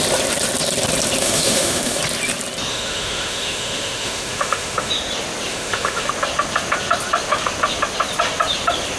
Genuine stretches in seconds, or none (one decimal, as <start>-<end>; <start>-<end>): 0.0-1.2; 2.0-2.7; 4.9-5.5; 6.1-9.0